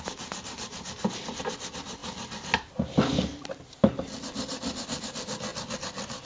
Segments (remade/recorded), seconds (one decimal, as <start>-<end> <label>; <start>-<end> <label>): 0.0-6.3 recorded